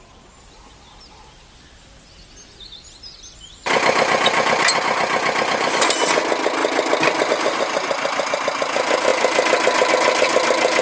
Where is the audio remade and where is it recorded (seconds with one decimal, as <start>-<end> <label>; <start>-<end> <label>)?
0.0-10.8 recorded